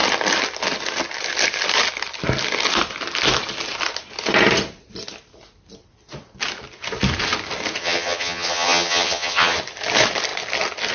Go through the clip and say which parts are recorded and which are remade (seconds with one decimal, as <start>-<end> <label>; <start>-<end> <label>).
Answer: 0.0-7.8 recorded; 7.8-9.6 remade; 9.6-10.9 recorded